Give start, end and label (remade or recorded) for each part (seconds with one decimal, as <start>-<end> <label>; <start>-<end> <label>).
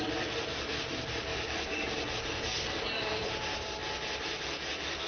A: 0.0-2.5 remade; 2.5-3.0 recorded; 3.0-3.8 remade; 3.8-5.1 recorded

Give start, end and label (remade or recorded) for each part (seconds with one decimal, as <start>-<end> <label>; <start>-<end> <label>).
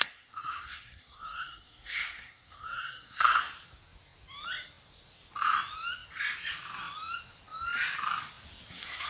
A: 0.0-3.5 remade; 3.5-8.7 recorded; 8.7-9.1 remade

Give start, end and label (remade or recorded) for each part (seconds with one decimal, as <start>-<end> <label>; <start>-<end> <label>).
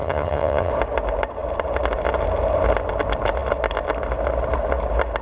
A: 0.0-0.7 remade; 0.7-5.2 recorded